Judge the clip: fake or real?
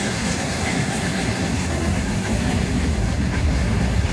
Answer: fake